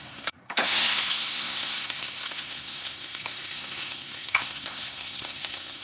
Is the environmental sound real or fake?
fake